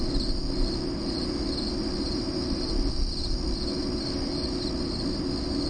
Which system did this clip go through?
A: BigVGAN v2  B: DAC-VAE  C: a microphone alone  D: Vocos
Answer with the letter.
C